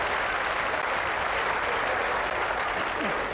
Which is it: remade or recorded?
recorded